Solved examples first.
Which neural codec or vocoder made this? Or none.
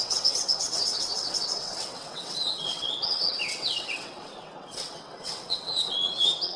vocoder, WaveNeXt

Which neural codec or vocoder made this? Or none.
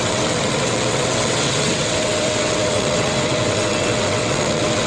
vocoder, WaveNeXt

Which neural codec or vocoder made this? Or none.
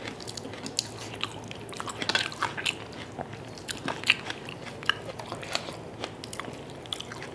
none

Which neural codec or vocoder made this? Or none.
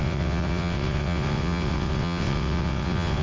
vocoder, WaveNeXt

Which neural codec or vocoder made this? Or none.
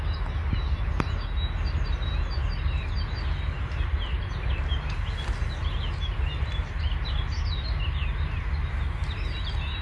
none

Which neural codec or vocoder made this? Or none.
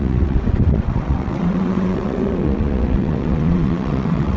vocoder, WaveNeXt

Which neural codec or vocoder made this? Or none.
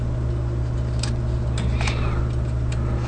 none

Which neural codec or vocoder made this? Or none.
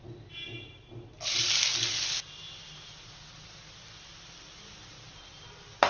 none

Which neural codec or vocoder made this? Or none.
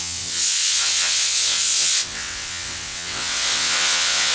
vocoder, WaveNeXt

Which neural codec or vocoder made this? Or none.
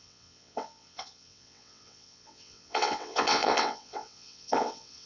vocoder, WaveNeXt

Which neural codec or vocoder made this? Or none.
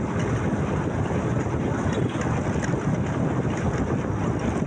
none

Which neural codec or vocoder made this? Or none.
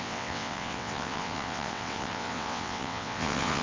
vocoder, WaveNeXt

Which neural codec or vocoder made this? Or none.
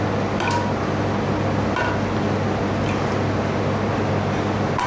none